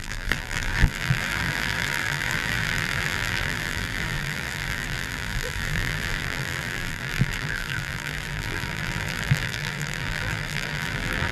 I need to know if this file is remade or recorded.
remade